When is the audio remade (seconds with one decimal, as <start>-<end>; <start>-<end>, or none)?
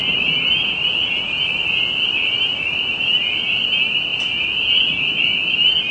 none